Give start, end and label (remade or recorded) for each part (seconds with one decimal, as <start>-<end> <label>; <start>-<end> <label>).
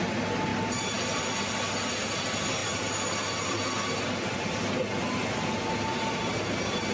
0.0-6.9 recorded